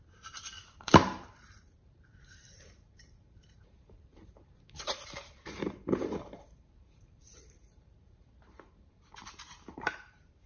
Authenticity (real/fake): fake